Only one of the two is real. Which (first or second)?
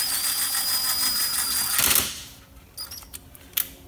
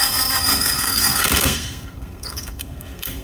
first